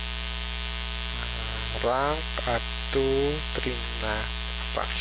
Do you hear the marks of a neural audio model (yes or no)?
no